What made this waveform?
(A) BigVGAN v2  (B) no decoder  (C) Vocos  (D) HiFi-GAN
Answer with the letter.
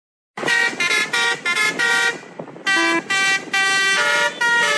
B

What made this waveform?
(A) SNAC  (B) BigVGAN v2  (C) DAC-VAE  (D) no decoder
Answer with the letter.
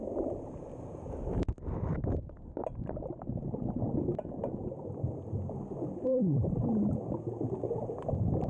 B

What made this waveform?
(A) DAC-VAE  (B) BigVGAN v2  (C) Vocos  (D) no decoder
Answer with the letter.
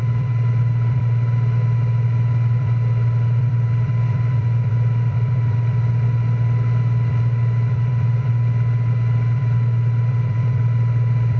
B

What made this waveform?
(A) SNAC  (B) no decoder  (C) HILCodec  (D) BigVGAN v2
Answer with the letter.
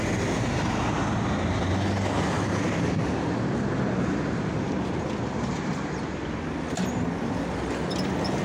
B